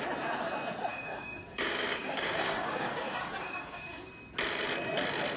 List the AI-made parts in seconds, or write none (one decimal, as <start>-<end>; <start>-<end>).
0.9-4.1